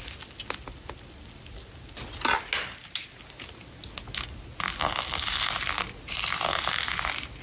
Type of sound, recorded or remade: recorded